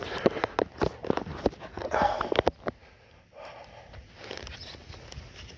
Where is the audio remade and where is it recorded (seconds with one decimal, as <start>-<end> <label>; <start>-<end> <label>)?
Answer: 0.0-1.7 recorded; 1.7-2.2 remade; 2.2-5.6 recorded